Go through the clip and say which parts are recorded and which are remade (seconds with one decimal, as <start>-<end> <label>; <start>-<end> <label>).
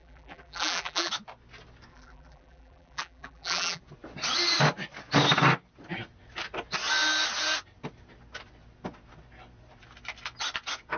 0.0-1.1 remade; 1.1-1.9 recorded; 1.9-3.8 remade; 3.8-11.0 recorded